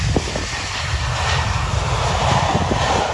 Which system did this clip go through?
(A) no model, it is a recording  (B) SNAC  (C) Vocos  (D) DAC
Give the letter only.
A